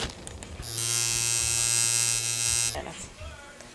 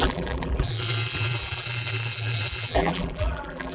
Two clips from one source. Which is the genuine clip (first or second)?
first